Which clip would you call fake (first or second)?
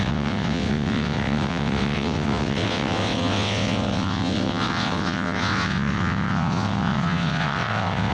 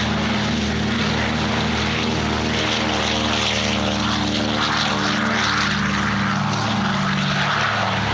first